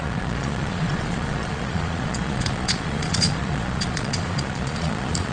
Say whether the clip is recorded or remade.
remade